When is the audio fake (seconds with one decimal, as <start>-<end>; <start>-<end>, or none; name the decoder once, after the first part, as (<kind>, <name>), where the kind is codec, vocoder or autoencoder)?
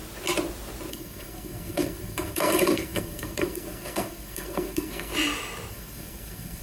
0.9-5.1 (codec, SNAC); 5.7-6.6